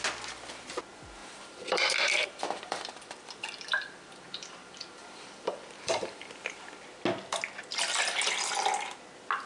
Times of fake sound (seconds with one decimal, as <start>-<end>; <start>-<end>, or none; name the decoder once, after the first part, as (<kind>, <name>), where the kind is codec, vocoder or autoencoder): 1.2-6.3 (vocoder, BigVGAN v2)